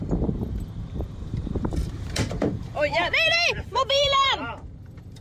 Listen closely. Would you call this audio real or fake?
fake